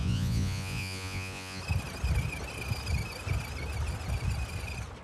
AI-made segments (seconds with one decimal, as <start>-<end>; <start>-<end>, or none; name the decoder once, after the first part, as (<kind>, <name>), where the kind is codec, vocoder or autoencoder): 0.0-1.6 (vocoder, Vocos)